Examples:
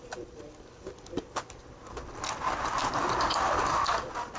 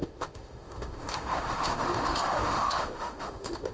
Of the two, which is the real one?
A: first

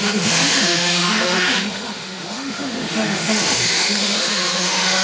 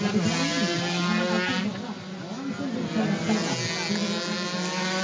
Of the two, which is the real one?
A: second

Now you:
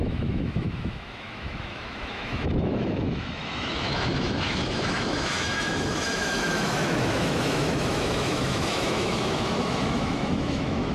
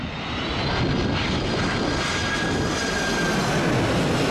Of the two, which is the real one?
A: second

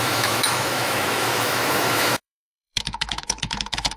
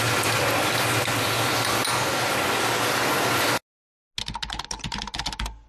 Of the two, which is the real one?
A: second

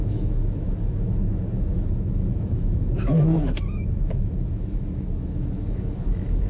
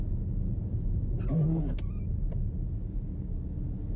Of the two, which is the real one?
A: second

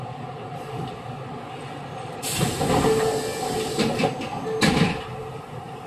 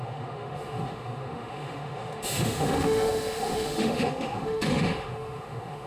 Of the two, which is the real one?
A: first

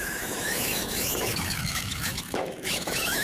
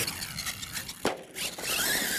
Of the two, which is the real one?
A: second